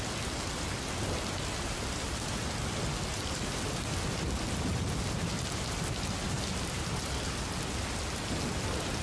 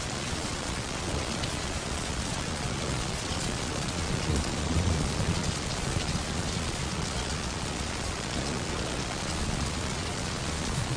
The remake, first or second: second